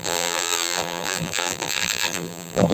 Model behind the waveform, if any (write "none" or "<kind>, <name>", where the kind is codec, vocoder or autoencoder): vocoder, BigVGAN v2